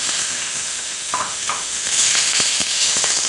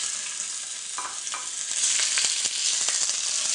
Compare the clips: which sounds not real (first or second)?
first